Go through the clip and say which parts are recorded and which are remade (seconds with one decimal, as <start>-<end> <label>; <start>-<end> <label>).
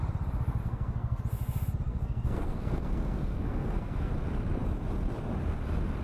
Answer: 0.0-0.6 recorded; 0.6-1.2 remade; 1.2-1.9 recorded; 1.9-4.1 remade; 4.1-6.0 recorded